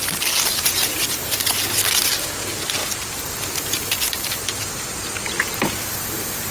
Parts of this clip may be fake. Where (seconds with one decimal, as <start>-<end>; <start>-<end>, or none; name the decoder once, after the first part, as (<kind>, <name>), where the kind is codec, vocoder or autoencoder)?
0.5-1.6 (vocoder, BigVGAN v2); 2.8-6.0